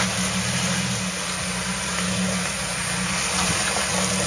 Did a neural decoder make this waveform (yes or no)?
no